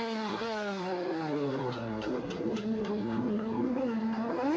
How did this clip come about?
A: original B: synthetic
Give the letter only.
B